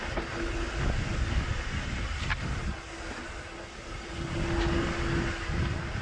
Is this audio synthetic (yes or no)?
no